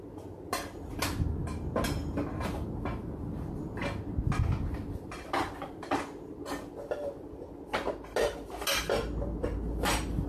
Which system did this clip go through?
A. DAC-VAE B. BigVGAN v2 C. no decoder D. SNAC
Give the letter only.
C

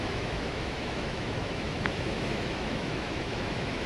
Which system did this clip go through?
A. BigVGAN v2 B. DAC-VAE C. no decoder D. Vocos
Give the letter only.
B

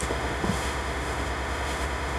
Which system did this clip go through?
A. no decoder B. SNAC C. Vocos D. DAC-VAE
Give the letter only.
D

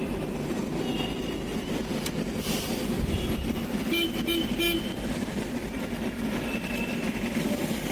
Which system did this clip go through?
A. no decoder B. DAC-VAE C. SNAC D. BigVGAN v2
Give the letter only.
A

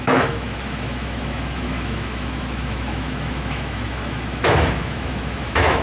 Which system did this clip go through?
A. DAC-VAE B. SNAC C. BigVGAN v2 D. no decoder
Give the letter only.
A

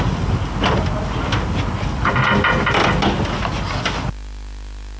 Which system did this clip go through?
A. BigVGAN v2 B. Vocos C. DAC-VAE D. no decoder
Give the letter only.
D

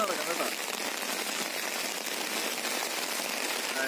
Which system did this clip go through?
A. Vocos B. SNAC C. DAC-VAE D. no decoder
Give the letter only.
D